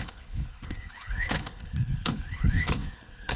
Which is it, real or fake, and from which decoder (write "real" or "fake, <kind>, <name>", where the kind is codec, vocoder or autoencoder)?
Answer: fake, codec, HILCodec